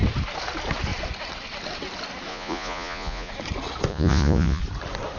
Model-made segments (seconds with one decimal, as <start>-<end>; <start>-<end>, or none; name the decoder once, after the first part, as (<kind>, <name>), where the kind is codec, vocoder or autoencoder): 2.3-3.3 (vocoder, Vocos); 3.9-4.6